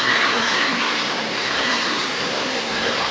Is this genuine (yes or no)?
no